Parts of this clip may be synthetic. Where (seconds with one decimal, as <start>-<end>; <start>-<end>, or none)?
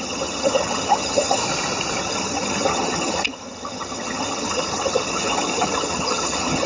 0.0-1.4; 2.0-6.7